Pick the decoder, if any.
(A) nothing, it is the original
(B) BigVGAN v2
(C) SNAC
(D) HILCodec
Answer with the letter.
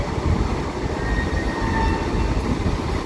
A